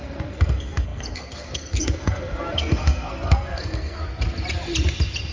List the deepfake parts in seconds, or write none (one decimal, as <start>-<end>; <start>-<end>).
0.0-4.0